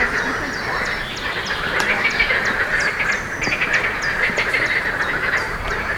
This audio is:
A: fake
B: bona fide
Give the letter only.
B